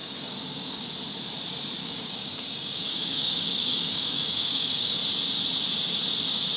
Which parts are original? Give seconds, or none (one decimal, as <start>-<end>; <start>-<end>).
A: 0.9-1.8; 5.0-6.6